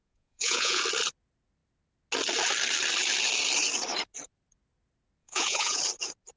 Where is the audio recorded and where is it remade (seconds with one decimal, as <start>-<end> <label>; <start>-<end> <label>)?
0.0-0.8 remade; 0.8-5.2 recorded; 5.2-5.8 remade; 5.8-6.4 recorded